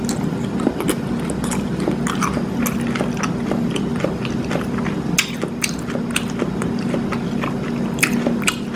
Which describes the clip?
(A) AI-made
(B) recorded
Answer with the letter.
B